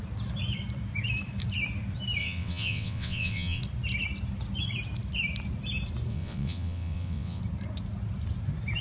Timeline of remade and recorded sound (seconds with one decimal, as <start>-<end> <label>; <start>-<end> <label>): 0.0-2.2 recorded; 2.2-3.6 remade; 3.6-6.1 recorded; 6.1-7.4 remade; 7.4-8.8 recorded